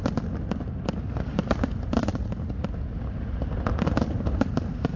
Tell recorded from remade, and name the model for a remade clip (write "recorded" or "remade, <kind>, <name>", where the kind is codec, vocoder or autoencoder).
recorded